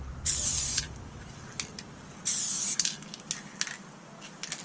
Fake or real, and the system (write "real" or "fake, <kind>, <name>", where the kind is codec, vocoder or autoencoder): real